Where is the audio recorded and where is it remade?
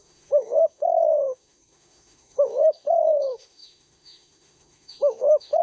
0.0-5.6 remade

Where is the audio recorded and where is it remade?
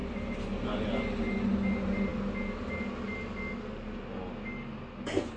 0.0-5.4 recorded